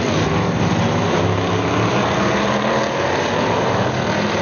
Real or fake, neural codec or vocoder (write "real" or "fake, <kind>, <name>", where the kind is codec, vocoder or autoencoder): real